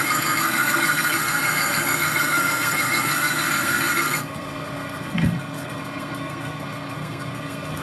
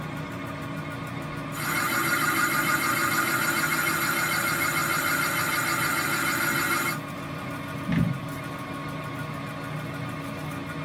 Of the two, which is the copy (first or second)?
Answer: first